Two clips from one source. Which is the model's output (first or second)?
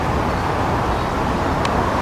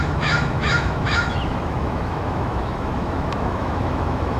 second